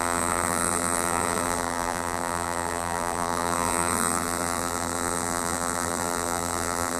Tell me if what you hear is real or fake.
fake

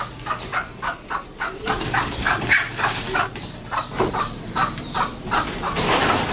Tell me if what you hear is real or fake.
fake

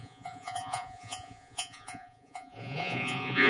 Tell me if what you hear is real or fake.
fake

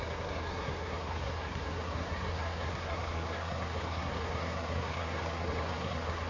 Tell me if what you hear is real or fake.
fake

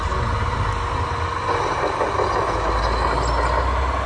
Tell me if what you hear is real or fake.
real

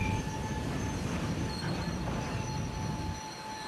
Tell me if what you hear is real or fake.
real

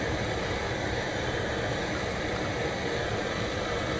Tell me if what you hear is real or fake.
real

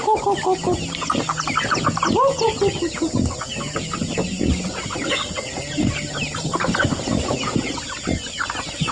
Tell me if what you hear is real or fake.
real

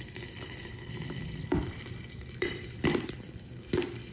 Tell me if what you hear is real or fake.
fake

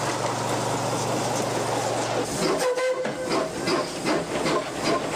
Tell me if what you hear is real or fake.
real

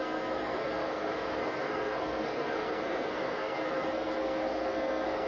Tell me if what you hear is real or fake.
fake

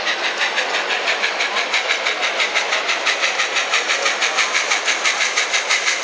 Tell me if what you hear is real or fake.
real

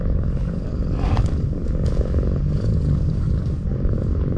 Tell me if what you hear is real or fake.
fake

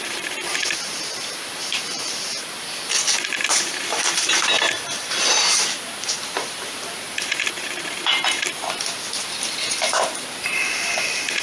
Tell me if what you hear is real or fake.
fake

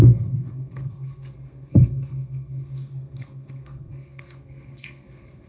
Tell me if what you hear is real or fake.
fake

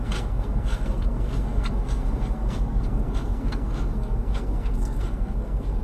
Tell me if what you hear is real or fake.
fake